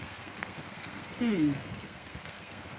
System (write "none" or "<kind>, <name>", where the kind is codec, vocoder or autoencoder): codec, SNAC